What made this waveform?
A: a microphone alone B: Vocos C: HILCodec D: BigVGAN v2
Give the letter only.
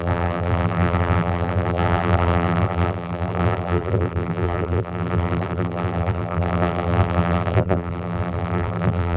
D